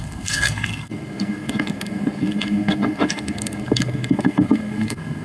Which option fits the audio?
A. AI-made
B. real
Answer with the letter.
A